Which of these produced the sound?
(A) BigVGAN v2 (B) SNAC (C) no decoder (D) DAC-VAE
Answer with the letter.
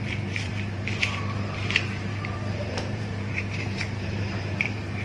A